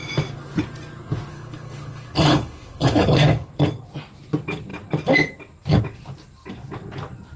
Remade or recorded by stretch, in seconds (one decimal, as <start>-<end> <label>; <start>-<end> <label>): 0.0-1.3 recorded; 1.3-3.5 remade; 3.5-7.4 recorded